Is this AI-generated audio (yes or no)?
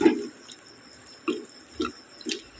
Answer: no